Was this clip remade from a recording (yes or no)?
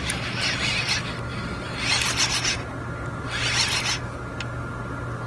no